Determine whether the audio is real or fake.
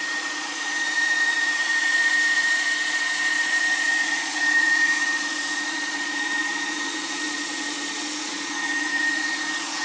fake